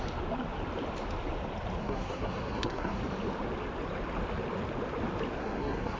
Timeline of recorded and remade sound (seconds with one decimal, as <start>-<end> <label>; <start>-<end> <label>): 0.0-1.8 recorded; 1.8-3.0 remade; 3.0-5.4 recorded; 5.4-6.0 remade